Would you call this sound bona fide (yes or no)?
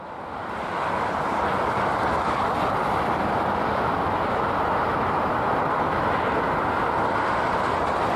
yes